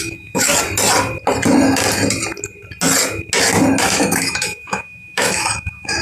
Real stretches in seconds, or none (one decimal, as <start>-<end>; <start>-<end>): 0.5-3.8